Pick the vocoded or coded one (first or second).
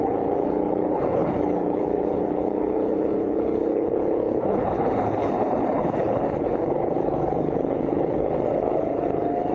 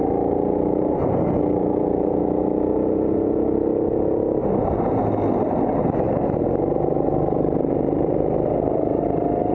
first